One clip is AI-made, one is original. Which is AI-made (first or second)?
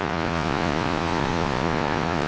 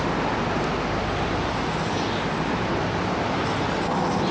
first